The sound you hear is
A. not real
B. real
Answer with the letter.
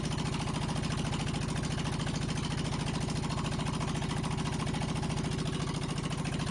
B